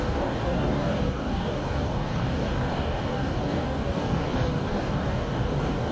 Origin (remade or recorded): remade